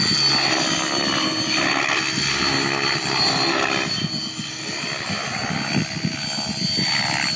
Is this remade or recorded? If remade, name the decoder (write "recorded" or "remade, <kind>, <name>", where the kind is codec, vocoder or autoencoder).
recorded